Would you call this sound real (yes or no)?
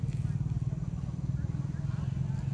yes